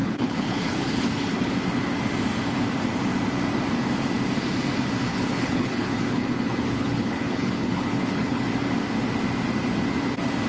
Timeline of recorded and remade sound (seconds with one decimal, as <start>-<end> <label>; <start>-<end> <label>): 0.0-1.5 remade; 1.5-5.1 recorded; 5.1-8.4 remade; 8.4-10.5 recorded